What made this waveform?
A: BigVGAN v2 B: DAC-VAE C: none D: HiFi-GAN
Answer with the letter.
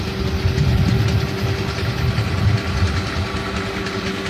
C